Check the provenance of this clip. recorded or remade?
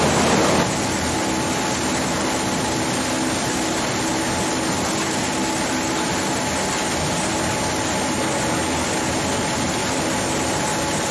recorded